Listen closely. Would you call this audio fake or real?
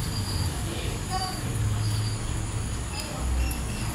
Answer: fake